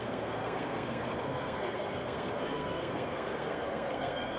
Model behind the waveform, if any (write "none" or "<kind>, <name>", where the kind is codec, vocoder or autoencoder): codec, SNAC